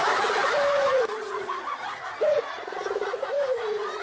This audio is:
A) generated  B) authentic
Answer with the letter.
A